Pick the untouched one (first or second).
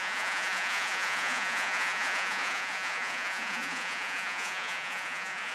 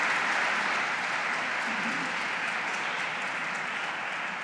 second